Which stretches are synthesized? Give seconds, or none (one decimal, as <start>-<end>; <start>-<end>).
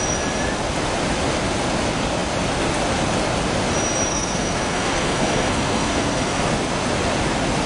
4.1-6.5